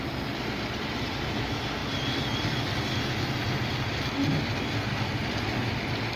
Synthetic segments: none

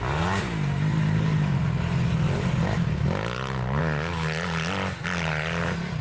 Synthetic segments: none

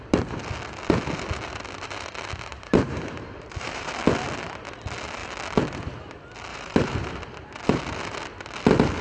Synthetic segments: 2.5-3.9 (vocoder, BigVGAN v2); 6.5-7.2

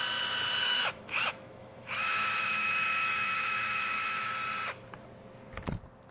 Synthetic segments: 0.6-4.3 (autoencoder, DAC-VAE)

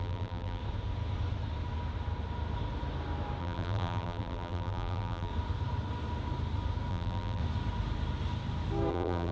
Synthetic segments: 0.0-0.6 (vocoder, BigVGAN v2); 3.4-5.3; 6.9-7.4; 8.9-9.3

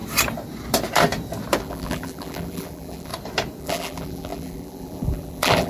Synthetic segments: 1.6-3.1 (vocoder, BigVGAN v2); 3.6-5.7